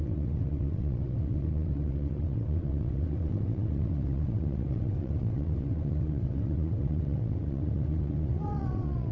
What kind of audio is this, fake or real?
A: fake